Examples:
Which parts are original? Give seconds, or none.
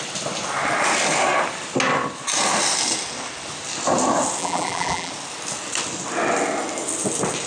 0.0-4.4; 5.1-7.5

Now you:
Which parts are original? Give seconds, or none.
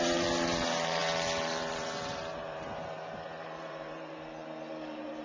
none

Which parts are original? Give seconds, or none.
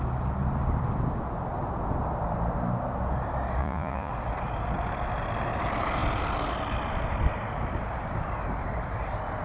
0.0-3.6; 4.1-9.4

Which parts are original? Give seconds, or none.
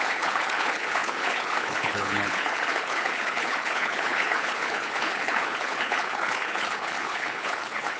none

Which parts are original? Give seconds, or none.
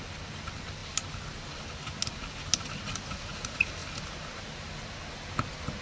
0.0-5.8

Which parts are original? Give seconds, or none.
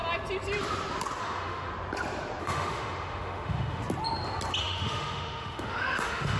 0.0-1.2; 1.7-2.4; 3.8-4.6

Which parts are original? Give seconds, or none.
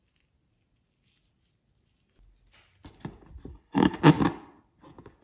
0.0-3.5; 4.0-5.2